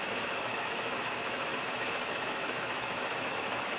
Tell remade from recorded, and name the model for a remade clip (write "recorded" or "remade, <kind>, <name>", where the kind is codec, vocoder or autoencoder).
remade, autoencoder, DAC-VAE